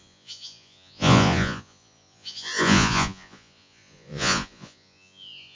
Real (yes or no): no